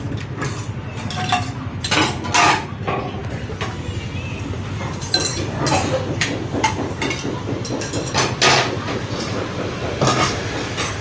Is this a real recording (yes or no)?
yes